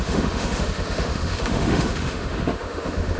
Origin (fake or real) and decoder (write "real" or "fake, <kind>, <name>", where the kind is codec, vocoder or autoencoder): fake, autoencoder, DAC-VAE